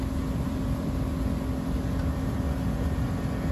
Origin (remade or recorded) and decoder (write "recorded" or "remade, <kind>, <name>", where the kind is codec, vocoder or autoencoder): recorded